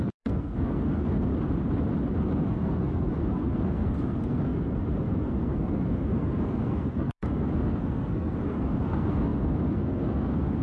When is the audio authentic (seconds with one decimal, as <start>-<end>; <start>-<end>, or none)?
1.3-2.2